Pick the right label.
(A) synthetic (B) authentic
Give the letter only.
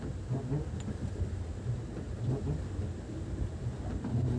B